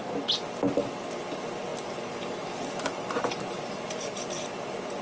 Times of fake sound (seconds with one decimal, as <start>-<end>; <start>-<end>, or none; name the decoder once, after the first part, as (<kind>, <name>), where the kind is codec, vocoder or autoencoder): none